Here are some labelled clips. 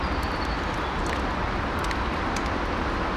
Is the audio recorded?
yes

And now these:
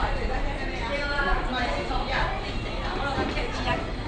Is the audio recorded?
yes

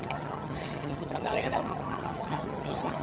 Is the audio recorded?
no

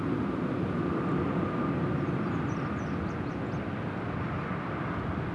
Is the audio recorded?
yes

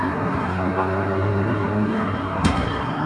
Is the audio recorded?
no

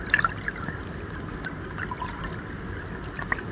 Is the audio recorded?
yes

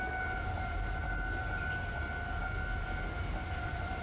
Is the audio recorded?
yes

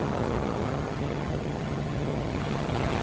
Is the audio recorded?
no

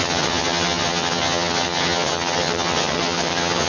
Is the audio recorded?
no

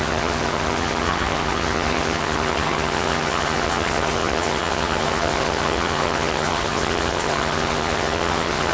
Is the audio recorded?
no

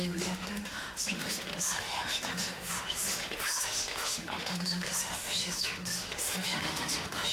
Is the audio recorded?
no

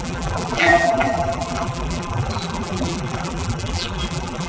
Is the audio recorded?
no